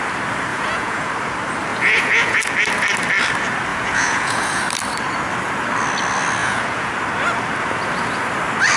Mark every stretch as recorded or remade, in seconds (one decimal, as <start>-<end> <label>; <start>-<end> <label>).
0.0-0.5 recorded; 0.5-1.1 remade; 1.1-1.7 recorded; 1.7-2.4 remade; 2.4-3.7 recorded; 3.7-4.6 remade; 4.6-6.4 recorded; 6.4-6.9 remade; 6.9-8.8 recorded